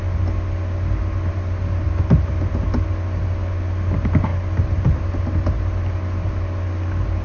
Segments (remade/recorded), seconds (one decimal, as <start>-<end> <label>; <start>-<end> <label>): 0.0-7.2 recorded